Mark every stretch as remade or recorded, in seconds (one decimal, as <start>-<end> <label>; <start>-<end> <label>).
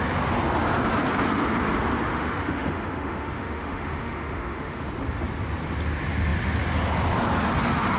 0.0-2.1 recorded; 2.1-4.9 remade; 4.9-8.0 recorded